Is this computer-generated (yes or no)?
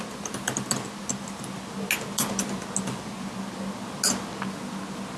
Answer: no